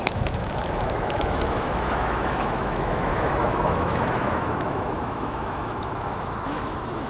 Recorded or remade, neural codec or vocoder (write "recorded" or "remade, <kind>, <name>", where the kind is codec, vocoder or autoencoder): remade, autoencoder, DAC-VAE